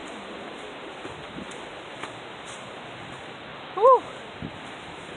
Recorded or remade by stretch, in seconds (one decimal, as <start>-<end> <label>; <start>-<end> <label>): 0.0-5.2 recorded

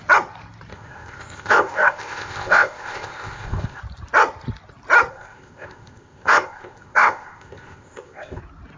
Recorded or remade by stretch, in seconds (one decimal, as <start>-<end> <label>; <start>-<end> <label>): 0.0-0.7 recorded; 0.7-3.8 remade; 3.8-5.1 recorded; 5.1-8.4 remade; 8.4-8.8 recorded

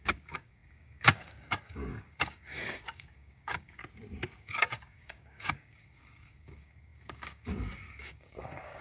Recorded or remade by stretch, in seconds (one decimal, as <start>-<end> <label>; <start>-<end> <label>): 0.0-3.8 remade; 3.8-4.4 recorded; 4.4-8.8 remade